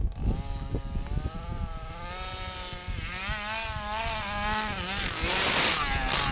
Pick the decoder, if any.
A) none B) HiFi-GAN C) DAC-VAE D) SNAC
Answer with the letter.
A